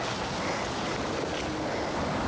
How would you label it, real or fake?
real